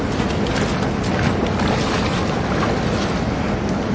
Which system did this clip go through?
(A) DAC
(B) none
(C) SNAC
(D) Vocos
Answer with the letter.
B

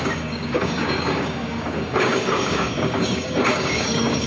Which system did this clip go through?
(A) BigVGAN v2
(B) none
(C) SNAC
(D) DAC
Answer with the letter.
D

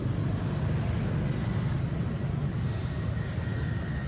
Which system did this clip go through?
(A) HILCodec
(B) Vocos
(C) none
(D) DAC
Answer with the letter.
C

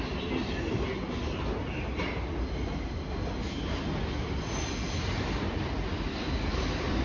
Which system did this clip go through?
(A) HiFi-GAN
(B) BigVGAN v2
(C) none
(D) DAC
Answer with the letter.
C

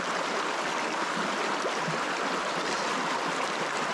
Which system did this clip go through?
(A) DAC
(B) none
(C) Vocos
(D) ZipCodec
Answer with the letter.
B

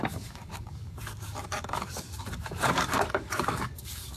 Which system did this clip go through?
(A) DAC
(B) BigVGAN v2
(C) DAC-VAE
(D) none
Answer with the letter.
A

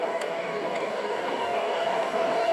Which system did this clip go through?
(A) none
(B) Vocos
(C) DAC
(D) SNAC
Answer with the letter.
C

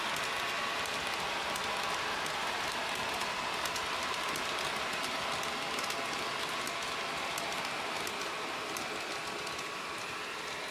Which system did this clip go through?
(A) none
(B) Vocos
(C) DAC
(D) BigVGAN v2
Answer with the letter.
A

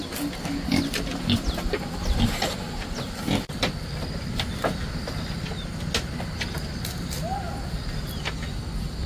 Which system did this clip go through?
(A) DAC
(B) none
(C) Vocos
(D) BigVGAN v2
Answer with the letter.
B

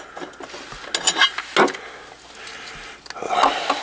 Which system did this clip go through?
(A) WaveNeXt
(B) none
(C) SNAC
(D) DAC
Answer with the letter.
B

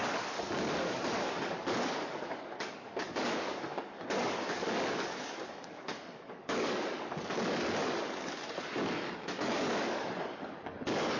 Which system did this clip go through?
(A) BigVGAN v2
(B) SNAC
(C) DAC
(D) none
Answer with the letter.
C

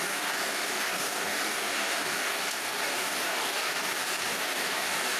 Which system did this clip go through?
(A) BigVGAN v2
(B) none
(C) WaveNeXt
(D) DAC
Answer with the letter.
D